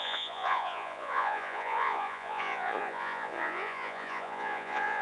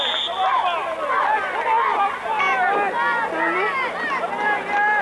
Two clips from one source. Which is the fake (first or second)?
first